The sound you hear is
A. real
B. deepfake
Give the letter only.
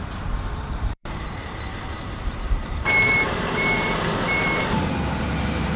B